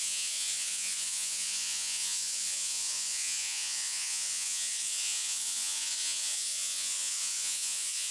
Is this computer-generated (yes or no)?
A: yes